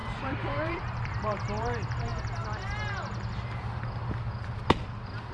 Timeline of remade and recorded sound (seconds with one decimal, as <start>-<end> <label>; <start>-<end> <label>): 0.0-2.1 remade; 2.1-5.3 recorded